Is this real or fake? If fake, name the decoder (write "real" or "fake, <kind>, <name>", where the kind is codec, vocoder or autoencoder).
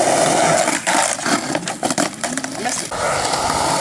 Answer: real